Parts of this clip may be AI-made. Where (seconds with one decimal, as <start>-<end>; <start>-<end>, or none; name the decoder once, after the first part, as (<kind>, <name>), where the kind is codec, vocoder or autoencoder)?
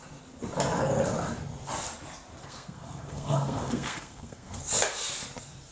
2.4-4.6 (codec, SNAC)